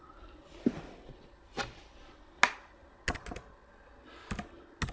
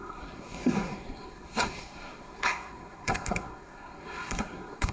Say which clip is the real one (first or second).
first